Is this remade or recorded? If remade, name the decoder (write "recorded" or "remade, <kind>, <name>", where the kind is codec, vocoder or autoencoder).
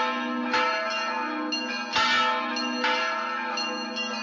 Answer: recorded